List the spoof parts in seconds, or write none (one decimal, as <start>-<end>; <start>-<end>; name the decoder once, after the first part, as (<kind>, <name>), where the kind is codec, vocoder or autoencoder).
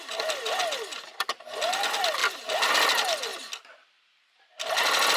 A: 2.2-2.7 (vocoder, BigVGAN v2); 3.3-5.2